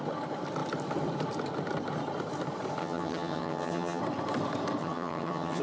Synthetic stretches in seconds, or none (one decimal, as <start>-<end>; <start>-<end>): 2.8-4.0; 4.8-5.6